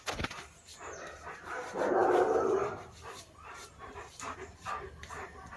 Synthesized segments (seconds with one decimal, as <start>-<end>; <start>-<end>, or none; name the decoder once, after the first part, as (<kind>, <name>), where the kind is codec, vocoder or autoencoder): 0.0-0.7 (vocoder, BigVGAN v2); 1.3-5.6